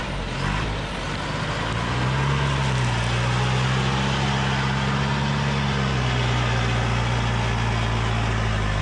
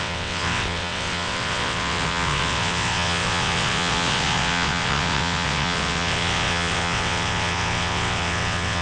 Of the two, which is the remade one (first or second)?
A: second